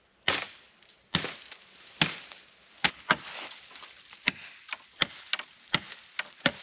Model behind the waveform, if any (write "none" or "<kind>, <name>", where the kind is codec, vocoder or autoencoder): none